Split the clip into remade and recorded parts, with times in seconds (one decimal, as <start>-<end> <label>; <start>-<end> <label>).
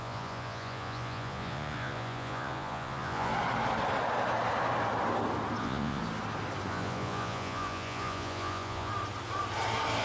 0.0-3.3 remade; 3.3-5.6 recorded; 5.6-6.0 remade; 6.0-6.7 recorded; 6.7-8.9 remade; 8.9-10.0 recorded